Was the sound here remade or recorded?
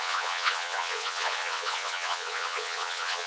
remade